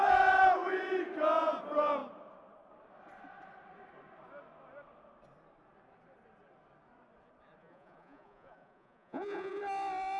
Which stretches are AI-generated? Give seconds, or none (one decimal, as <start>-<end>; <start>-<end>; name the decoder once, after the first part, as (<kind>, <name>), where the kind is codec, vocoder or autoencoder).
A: 7.6-9.6 (vocoder, Vocos)